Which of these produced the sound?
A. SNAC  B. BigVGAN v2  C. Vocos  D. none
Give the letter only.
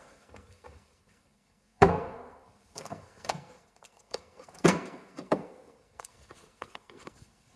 A